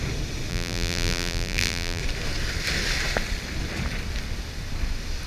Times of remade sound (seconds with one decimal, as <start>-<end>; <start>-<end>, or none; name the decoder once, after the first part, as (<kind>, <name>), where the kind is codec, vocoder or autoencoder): 0.5-2.0 (vocoder, BigVGAN v2)

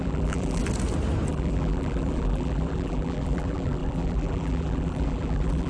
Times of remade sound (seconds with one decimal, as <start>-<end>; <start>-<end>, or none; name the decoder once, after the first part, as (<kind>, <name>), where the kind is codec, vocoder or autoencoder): 0.0-0.6 (vocoder, BigVGAN v2); 1.3-5.7